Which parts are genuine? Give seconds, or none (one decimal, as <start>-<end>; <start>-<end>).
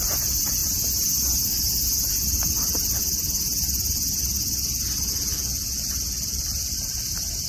0.0-7.5